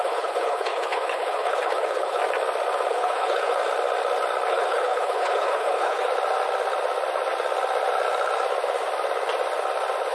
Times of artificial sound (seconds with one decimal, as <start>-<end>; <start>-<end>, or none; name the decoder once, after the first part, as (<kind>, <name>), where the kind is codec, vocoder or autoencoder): 0.0-2.2 (codec, HILCodec); 2.9-3.6; 4.5-6.1